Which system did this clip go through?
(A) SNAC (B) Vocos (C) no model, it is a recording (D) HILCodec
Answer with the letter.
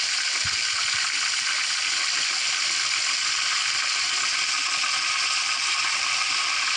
C